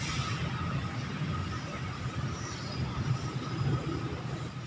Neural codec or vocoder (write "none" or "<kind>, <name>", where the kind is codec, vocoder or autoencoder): none